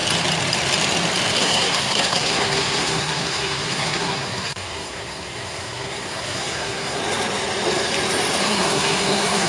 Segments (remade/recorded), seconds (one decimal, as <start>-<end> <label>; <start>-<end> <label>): 0.0-1.4 recorded; 1.4-7.0 remade; 7.0-8.4 recorded; 8.4-9.5 remade